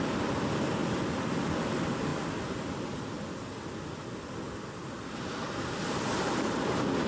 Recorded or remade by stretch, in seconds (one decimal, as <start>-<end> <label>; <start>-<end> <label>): 0.0-0.8 recorded; 0.8-1.5 remade; 1.5-7.1 recorded

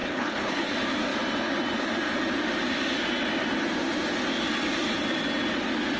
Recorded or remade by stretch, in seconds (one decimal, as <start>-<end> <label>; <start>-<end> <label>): 0.0-0.7 remade; 0.7-6.0 recorded

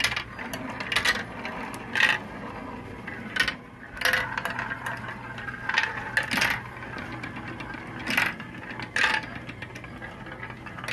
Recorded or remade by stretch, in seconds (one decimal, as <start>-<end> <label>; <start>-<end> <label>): 0.0-10.9 recorded

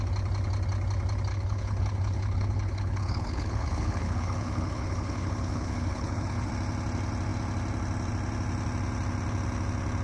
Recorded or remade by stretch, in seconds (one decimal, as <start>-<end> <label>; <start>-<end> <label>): 0.0-1.3 recorded; 1.3-6.5 remade; 6.5-10.0 recorded